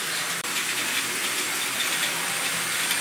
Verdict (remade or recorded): remade